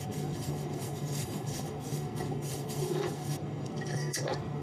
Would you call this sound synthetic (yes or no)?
yes